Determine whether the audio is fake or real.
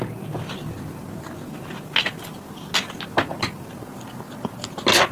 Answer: real